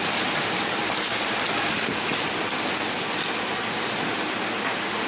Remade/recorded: recorded